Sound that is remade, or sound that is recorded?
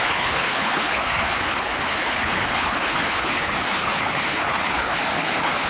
remade